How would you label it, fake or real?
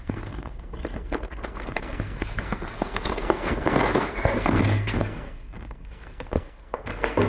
fake